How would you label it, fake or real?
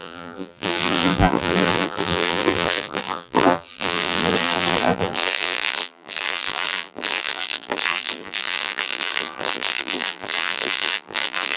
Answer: fake